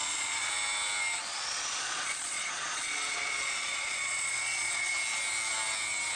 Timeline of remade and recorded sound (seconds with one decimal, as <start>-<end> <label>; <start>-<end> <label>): 0.0-0.5 remade; 0.5-1.2 recorded; 1.2-4.9 remade; 4.9-6.2 recorded